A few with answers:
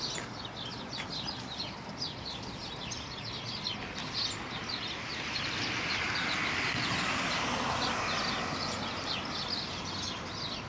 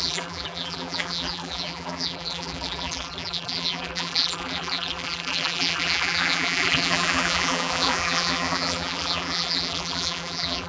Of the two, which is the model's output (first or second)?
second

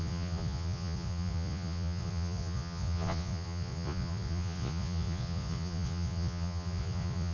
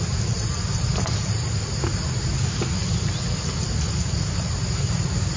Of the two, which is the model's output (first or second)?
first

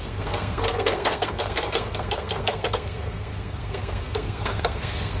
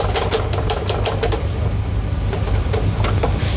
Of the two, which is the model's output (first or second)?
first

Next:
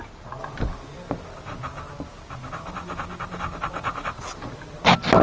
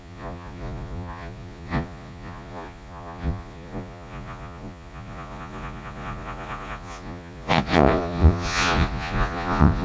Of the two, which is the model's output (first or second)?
second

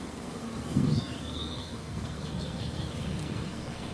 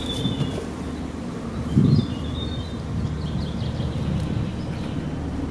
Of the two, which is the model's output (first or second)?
first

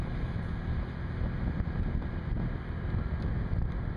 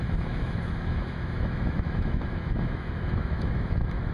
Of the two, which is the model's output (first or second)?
second